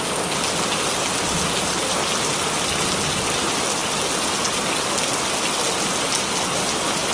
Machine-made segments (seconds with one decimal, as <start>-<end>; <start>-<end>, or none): none